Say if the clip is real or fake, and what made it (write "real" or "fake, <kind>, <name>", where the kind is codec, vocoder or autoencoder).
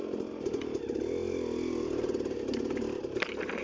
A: real